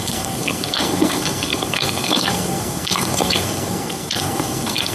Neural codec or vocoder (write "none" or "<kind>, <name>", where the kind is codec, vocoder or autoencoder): codec, SNAC